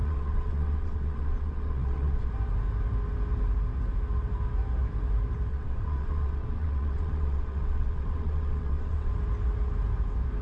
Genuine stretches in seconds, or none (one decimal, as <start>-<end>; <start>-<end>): 2.3-5.5; 9.1-10.4